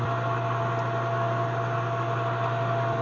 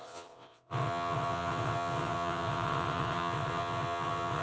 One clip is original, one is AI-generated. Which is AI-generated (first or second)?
second